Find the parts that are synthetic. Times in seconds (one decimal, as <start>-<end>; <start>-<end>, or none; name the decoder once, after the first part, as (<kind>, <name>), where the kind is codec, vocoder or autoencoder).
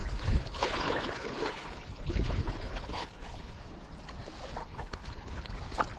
0.0-3.6 (codec, HILCodec); 4.6-5.5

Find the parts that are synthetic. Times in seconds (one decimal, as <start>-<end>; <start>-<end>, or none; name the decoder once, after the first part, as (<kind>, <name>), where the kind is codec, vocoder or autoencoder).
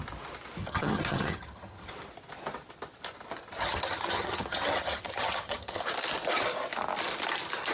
0.6-1.9 (vocoder, HiFi-GAN); 3.6-5.8